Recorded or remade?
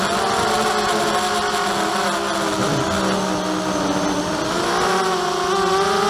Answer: recorded